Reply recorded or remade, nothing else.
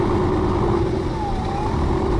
recorded